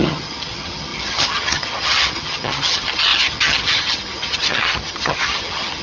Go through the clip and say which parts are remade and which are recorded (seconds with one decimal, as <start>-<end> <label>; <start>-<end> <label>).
0.0-5.8 remade